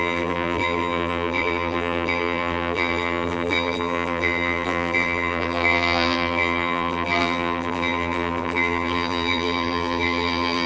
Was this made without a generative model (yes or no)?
no